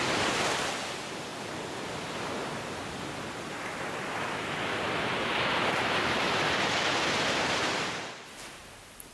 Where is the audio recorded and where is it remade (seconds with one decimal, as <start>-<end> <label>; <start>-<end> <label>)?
0.0-9.1 recorded